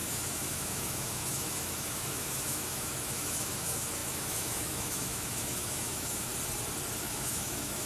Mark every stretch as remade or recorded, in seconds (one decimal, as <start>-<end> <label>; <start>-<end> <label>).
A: 0.0-6.3 remade; 6.3-7.0 recorded; 7.0-7.9 remade